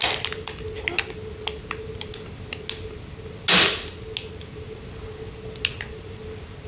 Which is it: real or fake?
real